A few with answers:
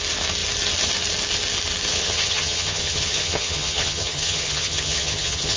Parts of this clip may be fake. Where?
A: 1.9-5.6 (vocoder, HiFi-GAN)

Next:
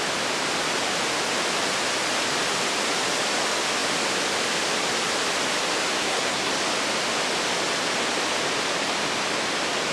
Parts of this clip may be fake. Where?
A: 6.0-6.5 (codec, SNAC)

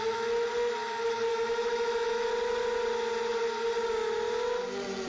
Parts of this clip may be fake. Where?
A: 1.3-2.3 (autoencoder, DAC-VAE)

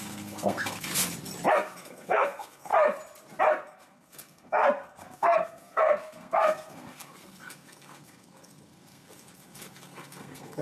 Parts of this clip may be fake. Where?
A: 0.0-0.9 (codec, SNAC); 1.5-2.7; 3.5-10.6

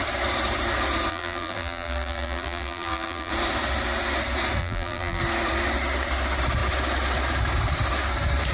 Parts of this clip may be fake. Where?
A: 1.1-3.3 (vocoder, BigVGAN v2); 4.6-5.2

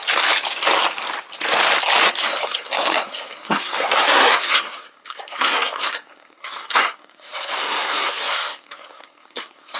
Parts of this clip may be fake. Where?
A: 2.1-9.8 (codec, SNAC)

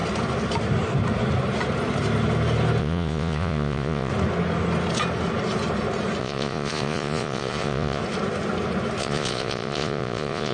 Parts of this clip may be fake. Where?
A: 2.8-4.1 (vocoder, Vocos); 6.2-8.0; 9.0-10.5